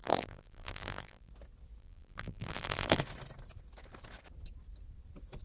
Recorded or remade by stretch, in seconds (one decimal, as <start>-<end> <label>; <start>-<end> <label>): 0.0-1.3 remade; 1.3-1.8 recorded; 1.8-3.0 remade; 3.0-5.4 recorded